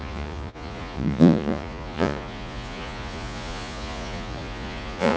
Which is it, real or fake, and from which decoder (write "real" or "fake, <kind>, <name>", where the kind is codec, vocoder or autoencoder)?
fake, vocoder, Vocos